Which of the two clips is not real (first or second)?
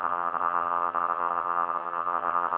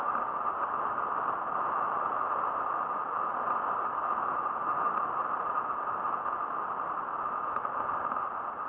first